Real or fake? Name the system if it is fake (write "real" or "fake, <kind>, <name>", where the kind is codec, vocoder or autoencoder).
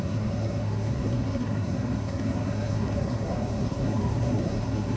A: fake, codec, SNAC